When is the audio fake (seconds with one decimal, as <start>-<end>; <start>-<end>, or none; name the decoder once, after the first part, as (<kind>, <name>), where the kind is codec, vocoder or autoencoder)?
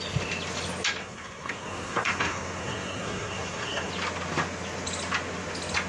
1.0-3.9 (codec, SNAC)